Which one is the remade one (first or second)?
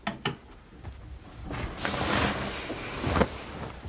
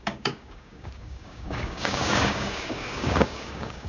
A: second